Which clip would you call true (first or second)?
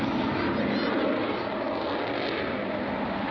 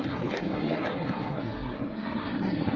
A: first